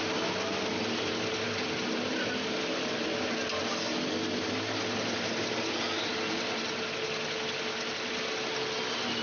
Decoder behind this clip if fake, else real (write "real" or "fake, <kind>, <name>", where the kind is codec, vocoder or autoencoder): real